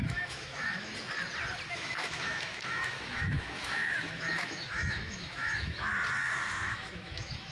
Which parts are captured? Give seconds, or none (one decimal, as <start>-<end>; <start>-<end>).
0.9-1.7; 5.9-6.5